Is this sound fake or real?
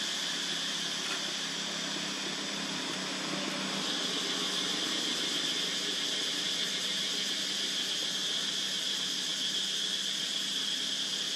real